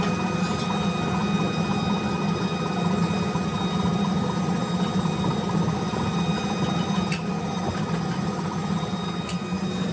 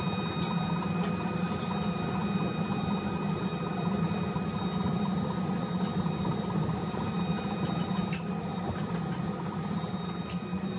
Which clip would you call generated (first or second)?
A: second